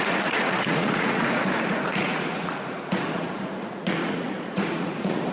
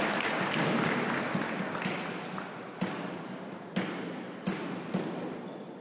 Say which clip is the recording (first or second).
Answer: second